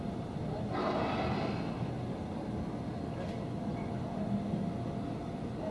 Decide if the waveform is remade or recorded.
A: recorded